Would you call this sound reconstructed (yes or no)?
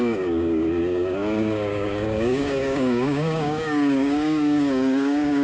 yes